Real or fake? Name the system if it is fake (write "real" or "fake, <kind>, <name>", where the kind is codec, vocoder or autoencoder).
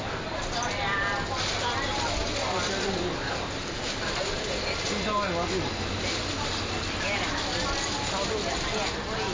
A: real